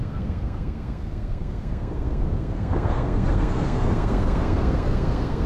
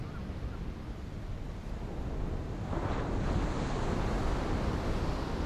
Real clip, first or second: second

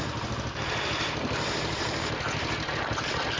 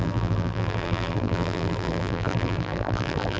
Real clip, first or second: first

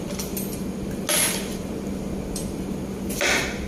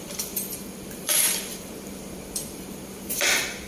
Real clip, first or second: first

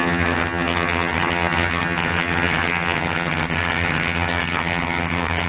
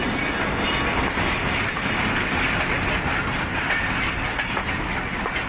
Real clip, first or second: second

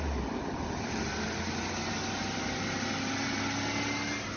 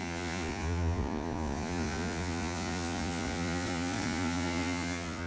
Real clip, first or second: first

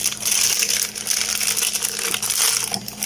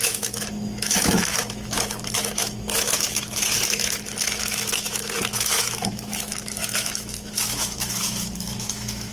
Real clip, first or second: first